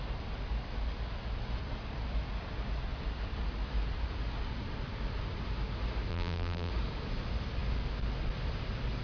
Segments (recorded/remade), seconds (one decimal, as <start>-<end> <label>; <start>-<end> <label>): 0.0-6.1 recorded; 6.1-6.7 remade; 6.7-9.0 recorded